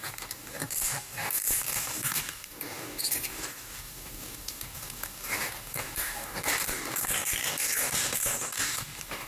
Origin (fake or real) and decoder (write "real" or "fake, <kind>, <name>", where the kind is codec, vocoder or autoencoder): fake, codec, DAC